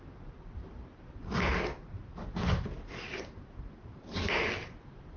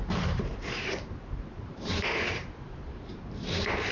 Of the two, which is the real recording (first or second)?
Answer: first